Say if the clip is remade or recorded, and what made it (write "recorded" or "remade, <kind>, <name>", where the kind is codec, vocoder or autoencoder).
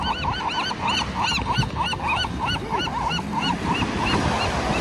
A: recorded